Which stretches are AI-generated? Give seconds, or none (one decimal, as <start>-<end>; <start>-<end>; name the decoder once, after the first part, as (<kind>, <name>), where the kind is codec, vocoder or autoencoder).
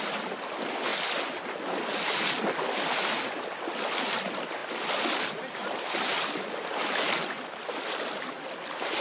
none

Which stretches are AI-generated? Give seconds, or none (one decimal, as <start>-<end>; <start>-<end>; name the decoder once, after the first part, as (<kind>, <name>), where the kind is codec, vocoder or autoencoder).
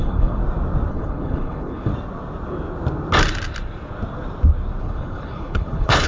0.0-0.4 (codec, HILCodec); 0.9-1.9; 4.8-6.1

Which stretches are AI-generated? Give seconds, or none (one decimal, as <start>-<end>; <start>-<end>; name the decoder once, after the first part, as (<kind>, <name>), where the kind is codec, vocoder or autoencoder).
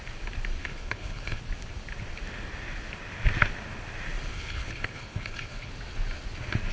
0.6-1.4 (codec, HILCodec); 4.3-5.7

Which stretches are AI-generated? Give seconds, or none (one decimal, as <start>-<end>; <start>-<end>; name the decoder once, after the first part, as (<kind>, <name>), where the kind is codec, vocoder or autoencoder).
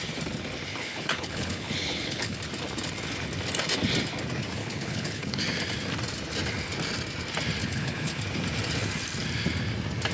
0.7-2.4 (codec, HILCodec); 4.6-5.4; 7.6-8.2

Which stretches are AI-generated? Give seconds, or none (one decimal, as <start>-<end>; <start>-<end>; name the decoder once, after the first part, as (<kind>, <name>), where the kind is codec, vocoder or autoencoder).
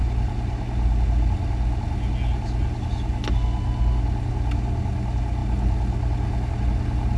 none